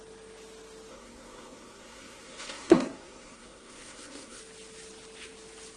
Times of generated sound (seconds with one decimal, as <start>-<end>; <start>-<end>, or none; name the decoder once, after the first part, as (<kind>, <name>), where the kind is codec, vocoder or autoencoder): 0.9-4.4 (codec, SNAC)